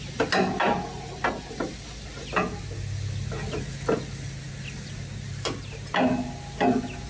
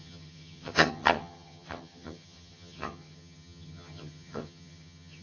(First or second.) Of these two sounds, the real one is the first